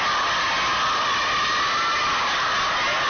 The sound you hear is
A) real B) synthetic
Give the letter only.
A